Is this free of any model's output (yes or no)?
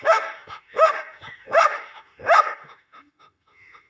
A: no